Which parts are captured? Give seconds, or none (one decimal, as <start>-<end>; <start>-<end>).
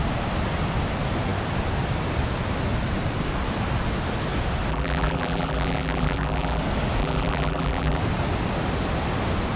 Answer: 0.0-4.7; 6.6-7.0; 8.0-9.6